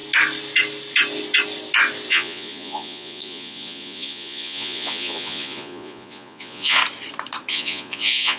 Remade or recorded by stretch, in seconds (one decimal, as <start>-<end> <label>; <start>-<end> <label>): 0.0-2.1 recorded; 2.1-6.8 remade; 6.8-7.5 recorded; 7.5-8.4 remade